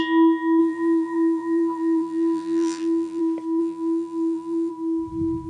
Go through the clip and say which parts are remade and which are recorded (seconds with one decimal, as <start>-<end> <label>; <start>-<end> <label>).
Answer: 0.0-0.6 recorded; 0.6-3.2 remade; 3.2-3.6 recorded; 3.6-4.7 remade; 4.7-5.5 recorded